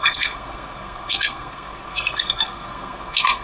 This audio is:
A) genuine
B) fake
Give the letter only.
B